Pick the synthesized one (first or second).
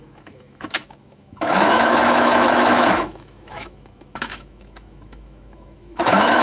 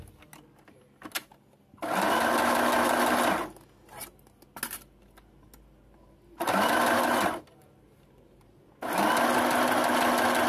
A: first